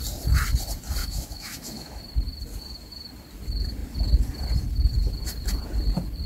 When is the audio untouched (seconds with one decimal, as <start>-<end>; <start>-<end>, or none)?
0.0-1.0; 2.0-6.3